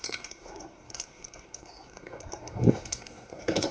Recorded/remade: remade